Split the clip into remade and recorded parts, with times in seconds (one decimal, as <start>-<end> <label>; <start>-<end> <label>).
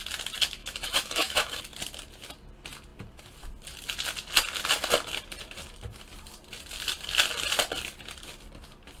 0.0-0.6 recorded; 0.6-1.6 remade; 1.6-9.0 recorded